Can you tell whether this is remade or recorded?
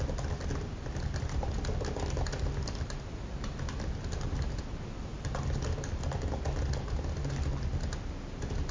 recorded